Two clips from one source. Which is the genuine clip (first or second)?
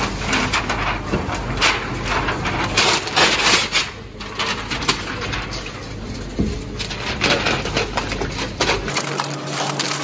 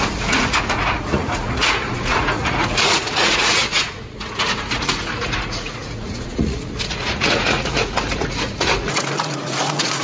first